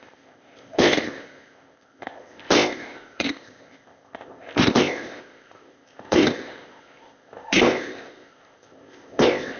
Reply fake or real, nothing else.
fake